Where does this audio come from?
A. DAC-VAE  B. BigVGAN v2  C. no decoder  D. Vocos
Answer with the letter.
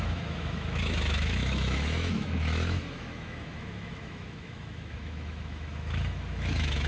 A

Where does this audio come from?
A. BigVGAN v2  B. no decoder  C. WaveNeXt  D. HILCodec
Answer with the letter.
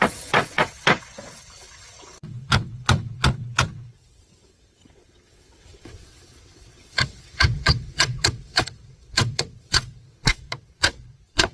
C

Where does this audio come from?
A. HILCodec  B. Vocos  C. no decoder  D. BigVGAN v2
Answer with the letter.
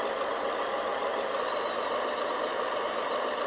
C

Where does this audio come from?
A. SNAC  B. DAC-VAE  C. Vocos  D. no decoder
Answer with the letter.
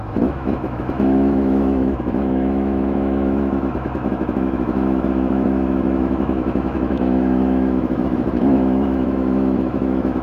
B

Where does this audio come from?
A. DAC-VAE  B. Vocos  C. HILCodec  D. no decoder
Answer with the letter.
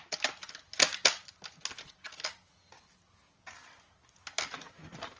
D